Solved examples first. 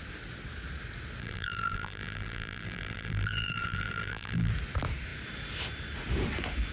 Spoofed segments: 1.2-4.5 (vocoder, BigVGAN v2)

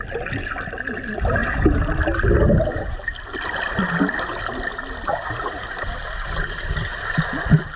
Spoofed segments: 1.4-1.9 (vocoder, BigVGAN v2)

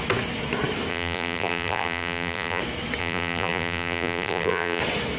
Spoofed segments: 0.9-2.6 (vocoder, BigVGAN v2); 3.0-4.8

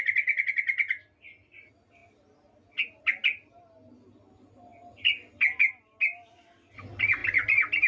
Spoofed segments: none

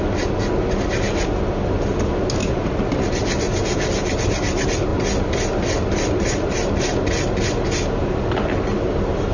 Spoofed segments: 4.9-6.7 (vocoder, BigVGAN v2)

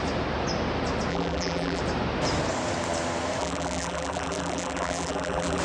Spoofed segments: 1.1-1.8 (vocoder, BigVGAN v2); 3.4-5.6